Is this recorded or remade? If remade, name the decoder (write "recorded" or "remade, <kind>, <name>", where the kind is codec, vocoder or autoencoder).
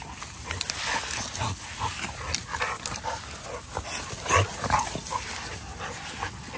recorded